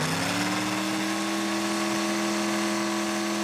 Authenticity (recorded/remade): recorded